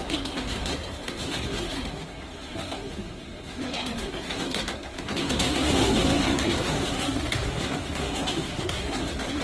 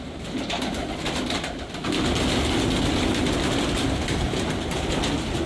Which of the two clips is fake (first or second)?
first